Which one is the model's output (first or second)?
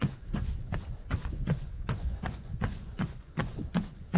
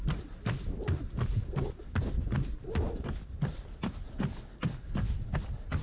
first